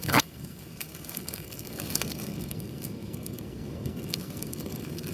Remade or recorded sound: remade